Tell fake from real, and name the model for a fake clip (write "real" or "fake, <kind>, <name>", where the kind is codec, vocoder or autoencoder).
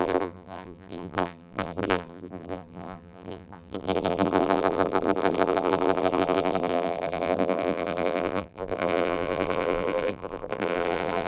fake, vocoder, BigVGAN v2